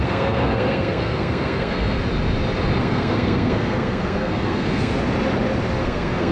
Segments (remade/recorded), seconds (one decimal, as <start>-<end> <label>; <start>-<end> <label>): 0.0-2.0 remade; 2.0-2.8 recorded; 2.8-4.9 remade; 4.9-5.8 recorded; 5.8-6.3 remade